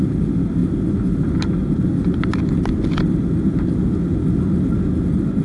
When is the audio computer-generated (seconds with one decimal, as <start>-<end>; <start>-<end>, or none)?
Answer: none